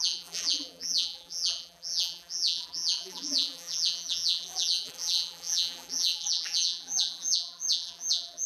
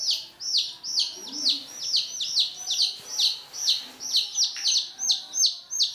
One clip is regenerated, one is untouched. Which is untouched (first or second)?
second